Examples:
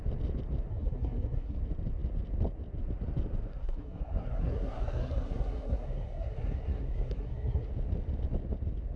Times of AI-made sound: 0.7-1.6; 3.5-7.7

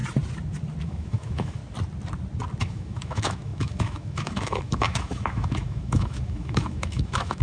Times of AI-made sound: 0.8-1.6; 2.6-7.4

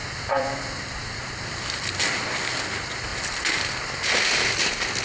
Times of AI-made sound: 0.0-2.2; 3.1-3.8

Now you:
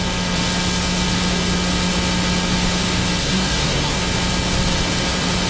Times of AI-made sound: 3.2-4.0